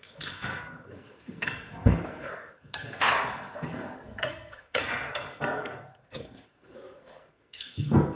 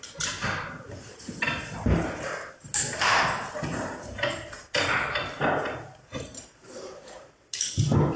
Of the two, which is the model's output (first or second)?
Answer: first